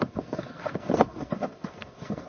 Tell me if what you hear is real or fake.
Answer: fake